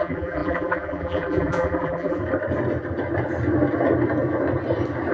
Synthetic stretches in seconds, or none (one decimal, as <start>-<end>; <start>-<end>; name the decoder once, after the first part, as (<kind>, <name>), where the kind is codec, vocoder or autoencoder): 0.0-2.2 (vocoder, BigVGAN v2)